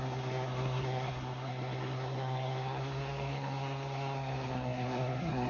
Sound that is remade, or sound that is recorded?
remade